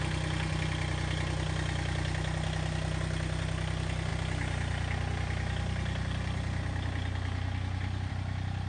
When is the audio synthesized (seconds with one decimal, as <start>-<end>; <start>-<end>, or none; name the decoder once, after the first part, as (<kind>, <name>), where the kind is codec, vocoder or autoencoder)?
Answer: none